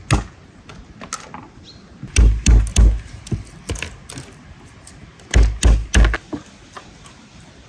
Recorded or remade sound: recorded